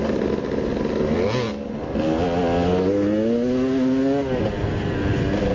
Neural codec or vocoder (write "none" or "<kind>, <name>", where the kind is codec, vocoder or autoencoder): none